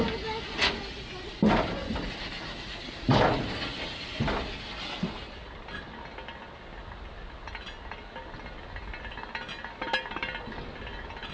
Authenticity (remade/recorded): recorded